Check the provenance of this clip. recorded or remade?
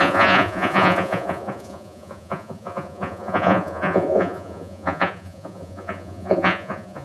remade